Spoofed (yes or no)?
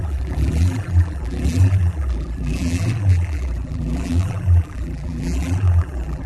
yes